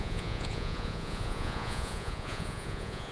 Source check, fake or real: fake